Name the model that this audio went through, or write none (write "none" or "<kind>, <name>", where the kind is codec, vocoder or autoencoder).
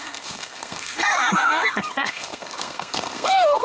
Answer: codec, SNAC